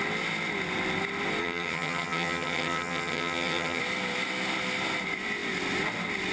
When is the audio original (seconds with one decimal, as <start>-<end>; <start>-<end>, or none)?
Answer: 0.0-1.4; 3.8-6.3